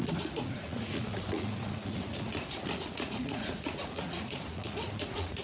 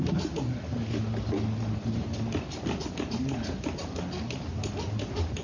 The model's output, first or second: first